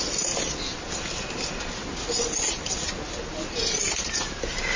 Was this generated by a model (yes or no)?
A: no